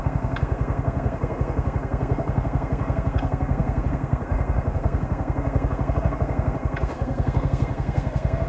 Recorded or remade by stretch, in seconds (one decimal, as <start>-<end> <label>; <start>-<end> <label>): 0.0-8.5 remade